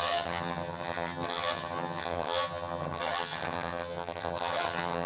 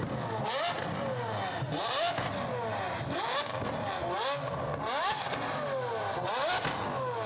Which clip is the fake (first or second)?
first